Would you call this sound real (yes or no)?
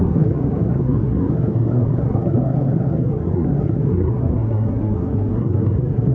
no